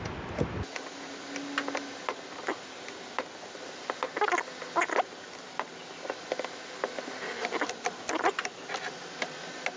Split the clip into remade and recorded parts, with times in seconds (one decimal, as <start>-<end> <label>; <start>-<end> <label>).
0.0-9.8 recorded